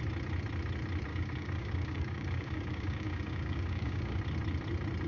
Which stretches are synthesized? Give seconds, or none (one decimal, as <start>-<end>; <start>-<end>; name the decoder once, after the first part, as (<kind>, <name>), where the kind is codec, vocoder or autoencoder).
1.1-4.2 (codec, DAC)